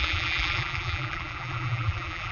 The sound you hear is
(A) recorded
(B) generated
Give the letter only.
B